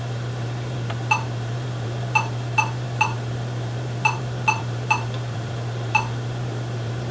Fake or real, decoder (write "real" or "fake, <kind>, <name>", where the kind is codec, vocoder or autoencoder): fake, vocoder, BigVGAN v2